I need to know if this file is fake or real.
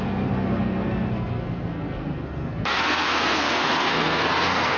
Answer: fake